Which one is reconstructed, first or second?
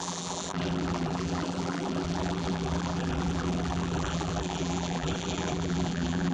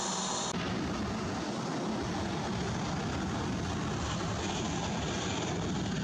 first